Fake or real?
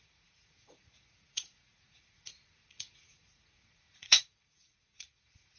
fake